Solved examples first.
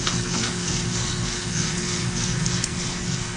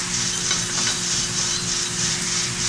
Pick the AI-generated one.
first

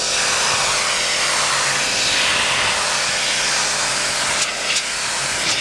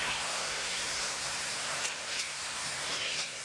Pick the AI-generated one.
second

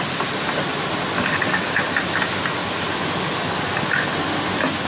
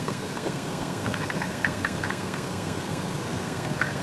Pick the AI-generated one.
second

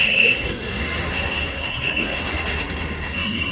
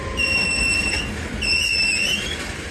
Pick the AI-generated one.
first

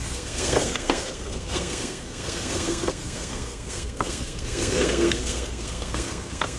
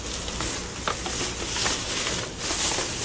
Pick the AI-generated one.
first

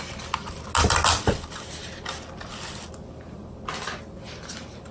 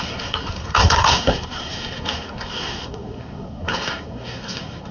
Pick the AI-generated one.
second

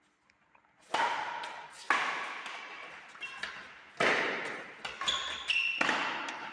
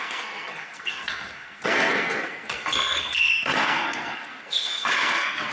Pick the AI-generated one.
second